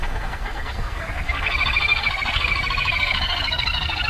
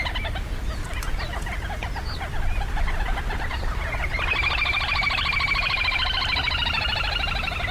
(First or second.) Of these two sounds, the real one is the second